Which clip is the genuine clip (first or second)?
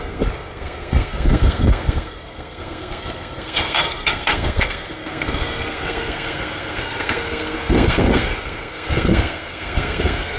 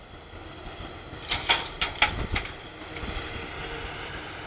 second